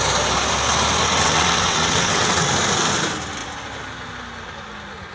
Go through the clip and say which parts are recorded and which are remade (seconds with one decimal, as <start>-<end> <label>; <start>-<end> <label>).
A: 0.0-1.2 recorded; 1.2-2.5 remade; 2.5-5.1 recorded